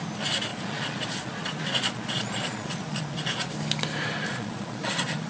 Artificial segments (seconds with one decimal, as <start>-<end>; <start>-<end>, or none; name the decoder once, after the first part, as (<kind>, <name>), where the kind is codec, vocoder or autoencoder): 0.5-3.5 (vocoder, Vocos); 4.3-5.3